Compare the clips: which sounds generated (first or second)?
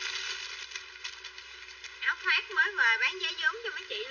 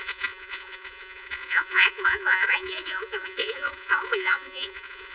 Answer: second